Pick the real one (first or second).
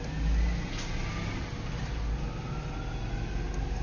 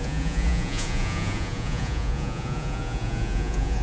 first